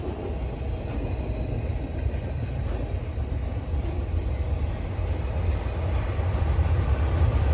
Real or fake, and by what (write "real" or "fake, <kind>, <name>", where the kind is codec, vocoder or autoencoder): real